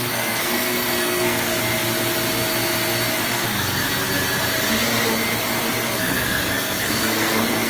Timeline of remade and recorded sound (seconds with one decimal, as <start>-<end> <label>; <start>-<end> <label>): 0.0-1.6 remade; 1.6-3.3 recorded; 3.3-3.8 remade; 3.8-6.0 recorded; 6.0-7.7 remade